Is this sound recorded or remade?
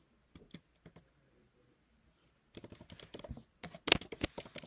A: recorded